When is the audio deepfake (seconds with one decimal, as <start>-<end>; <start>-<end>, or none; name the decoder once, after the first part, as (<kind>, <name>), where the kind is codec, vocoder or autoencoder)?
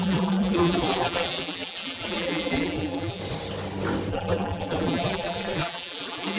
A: 0.0-3.2 (vocoder, BigVGAN v2); 4.1-6.4